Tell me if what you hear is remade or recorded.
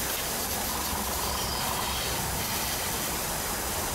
remade